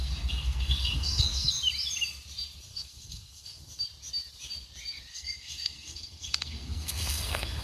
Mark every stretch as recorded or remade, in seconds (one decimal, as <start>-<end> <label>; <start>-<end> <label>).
0.0-1.5 remade; 1.5-2.7 recorded; 2.7-3.6 remade; 3.6-5.1 recorded; 5.1-7.6 remade